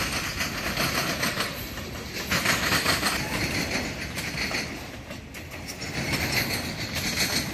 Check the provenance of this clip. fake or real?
real